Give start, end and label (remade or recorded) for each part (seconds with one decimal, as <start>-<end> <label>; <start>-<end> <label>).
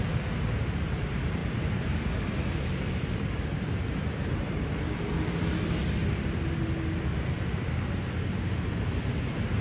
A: 0.0-9.6 recorded